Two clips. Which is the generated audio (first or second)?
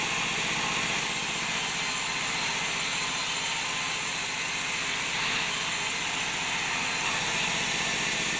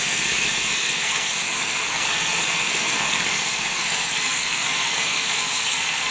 second